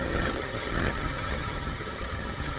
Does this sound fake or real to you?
fake